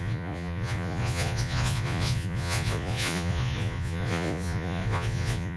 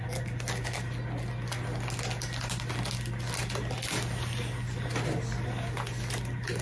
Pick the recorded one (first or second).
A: second